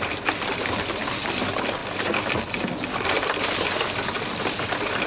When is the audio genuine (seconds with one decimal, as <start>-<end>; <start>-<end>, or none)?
0.0-5.1